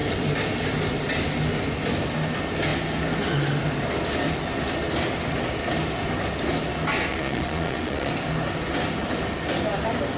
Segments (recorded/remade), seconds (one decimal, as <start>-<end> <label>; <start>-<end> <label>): 0.0-7.1 recorded; 7.1-8.1 remade; 8.1-10.2 recorded